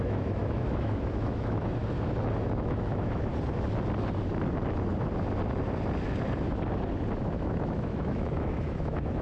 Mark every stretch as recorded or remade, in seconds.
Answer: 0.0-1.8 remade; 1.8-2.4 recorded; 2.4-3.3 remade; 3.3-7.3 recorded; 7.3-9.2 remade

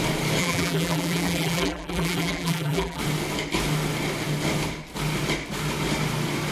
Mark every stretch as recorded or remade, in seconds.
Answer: 0.0-0.4 recorded; 0.4-3.0 remade; 3.0-6.5 recorded

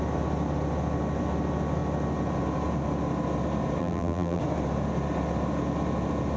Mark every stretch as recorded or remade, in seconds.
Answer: 0.0-3.8 recorded; 3.8-4.4 remade; 4.4-6.4 recorded

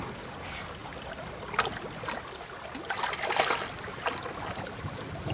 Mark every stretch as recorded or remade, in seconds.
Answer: 0.0-5.3 recorded

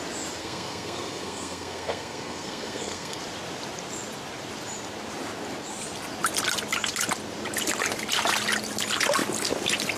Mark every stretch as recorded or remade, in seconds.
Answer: 0.0-0.4 recorded; 0.4-3.2 remade; 3.2-10.0 recorded

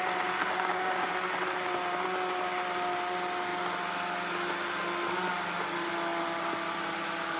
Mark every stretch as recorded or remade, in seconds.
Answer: 0.0-0.4 recorded; 0.4-1.1 remade; 1.1-7.4 recorded

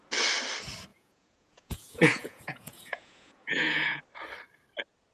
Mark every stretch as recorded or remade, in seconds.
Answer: 0.0-0.9 recorded; 0.9-4.0 remade; 4.0-5.1 recorded